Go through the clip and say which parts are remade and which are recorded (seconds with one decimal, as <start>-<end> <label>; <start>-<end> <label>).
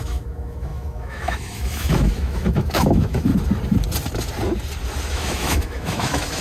0.0-3.3 remade; 3.3-5.1 recorded; 5.1-6.4 remade